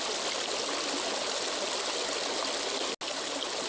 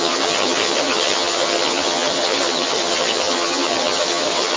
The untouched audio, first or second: first